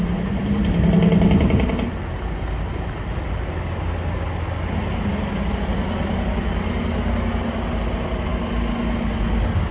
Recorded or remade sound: recorded